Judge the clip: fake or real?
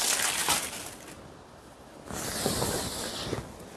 real